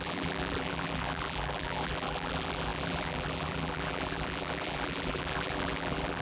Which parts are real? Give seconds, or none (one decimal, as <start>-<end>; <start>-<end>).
none